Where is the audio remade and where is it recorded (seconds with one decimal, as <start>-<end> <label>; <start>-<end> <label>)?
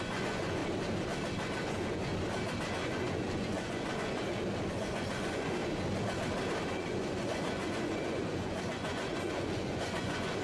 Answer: 0.0-0.6 remade; 0.6-1.6 recorded; 1.6-2.1 remade; 2.1-2.6 recorded; 2.6-4.2 remade; 4.2-4.7 recorded; 4.7-5.6 remade; 5.6-6.7 recorded; 6.7-10.4 remade